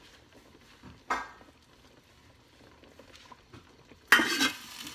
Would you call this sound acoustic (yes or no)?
yes